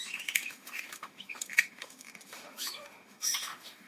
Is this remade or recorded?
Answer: remade